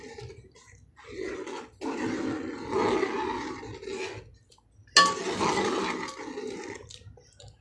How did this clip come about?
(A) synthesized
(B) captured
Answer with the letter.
B